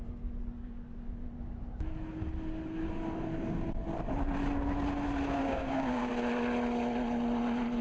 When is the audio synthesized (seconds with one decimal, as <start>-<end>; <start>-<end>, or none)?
5.4-6.1